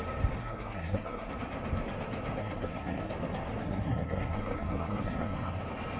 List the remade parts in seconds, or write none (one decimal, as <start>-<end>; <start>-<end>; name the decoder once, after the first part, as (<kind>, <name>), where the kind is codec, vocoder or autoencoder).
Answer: 0.4-1.3 (codec, SNAC); 2.4-3.1; 3.6-5.6